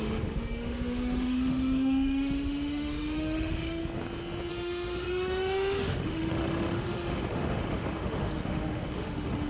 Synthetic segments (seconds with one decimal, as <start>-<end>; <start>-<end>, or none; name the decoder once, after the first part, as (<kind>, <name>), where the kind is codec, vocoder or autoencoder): 0.0-3.8 (autoencoder, DAC-VAE); 4.5-9.5